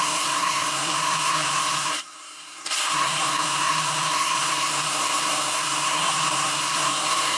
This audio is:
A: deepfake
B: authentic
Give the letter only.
A